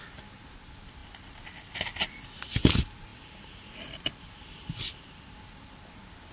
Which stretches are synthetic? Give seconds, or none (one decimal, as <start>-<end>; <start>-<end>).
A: none